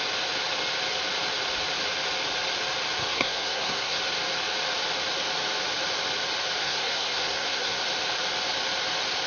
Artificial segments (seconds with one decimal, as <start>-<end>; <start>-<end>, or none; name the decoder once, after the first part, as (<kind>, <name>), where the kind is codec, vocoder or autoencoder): 3.0-4.0 (codec, SNAC); 6.6-7.8